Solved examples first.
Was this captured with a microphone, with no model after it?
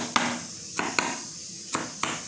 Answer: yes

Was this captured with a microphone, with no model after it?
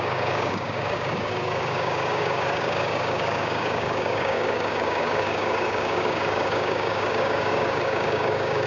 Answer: no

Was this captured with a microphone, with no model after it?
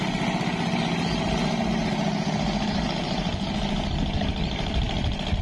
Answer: yes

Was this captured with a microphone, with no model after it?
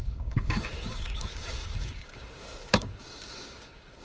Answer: no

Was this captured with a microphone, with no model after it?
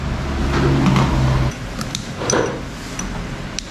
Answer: yes